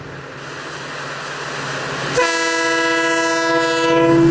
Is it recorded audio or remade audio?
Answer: recorded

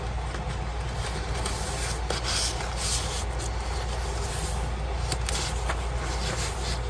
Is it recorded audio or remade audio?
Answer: recorded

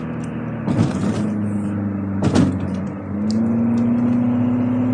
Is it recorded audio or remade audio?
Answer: recorded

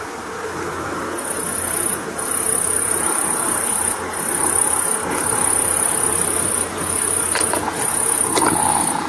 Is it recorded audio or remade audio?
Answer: recorded